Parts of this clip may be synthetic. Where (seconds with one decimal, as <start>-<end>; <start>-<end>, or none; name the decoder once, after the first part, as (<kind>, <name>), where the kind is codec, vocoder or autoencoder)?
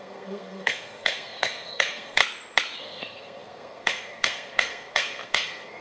0.0-2.2 (codec, SNAC); 2.8-5.8